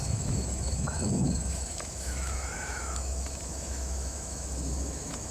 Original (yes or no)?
no